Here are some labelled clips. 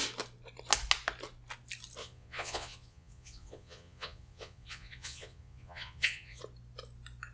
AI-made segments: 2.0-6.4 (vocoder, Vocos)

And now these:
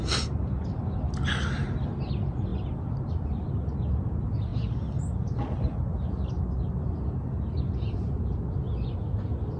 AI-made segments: none

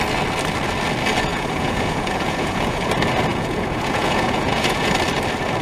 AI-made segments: 1.3-2.9 (vocoder, Vocos); 3.3-4.9

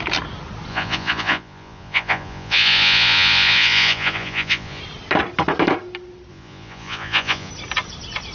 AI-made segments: 0.7-4.8 (vocoder, Vocos); 6.3-7.5

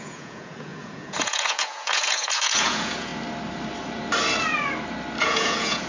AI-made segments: 0.0-3.1 (vocoder, Vocos); 5.2-5.9

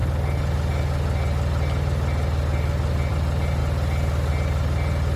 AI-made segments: none

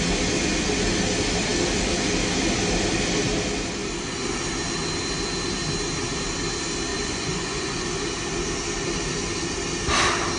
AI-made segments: 6.9-7.9 (vocoder, Vocos)

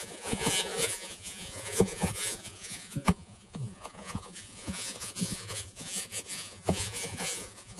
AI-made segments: 0.0-7.8 (vocoder, Vocos)